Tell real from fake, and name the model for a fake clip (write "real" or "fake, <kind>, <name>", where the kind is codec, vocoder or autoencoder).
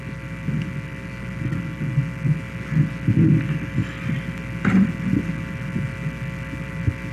real